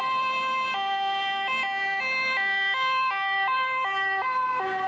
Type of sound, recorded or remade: recorded